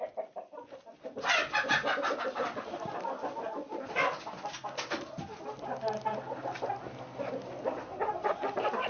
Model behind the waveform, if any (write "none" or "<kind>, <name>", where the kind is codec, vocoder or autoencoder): none